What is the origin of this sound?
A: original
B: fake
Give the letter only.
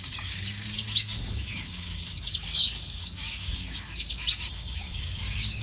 B